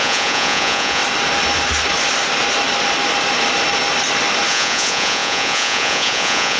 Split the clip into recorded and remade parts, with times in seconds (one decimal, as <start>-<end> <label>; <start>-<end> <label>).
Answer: 0.0-1.0 remade; 1.0-4.5 recorded; 4.5-6.6 remade